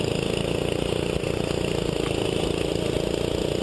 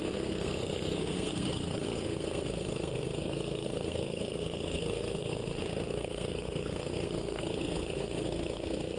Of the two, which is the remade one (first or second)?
second